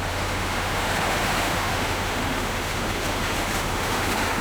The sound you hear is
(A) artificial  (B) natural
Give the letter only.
A